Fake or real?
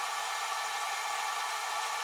real